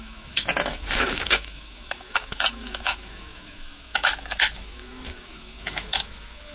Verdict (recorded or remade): remade